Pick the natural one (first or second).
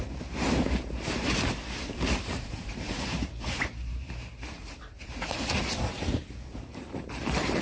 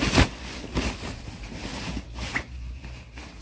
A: second